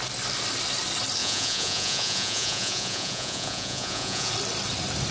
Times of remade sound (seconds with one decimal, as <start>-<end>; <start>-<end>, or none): 1.2-4.3